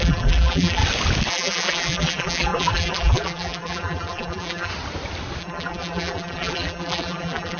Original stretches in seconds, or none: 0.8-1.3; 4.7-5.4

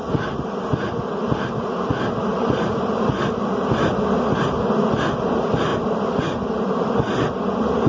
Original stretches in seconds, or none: 0.0-2.3; 3.2-7.9

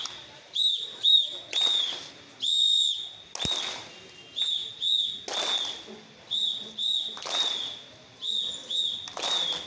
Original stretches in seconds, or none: 0.0-9.7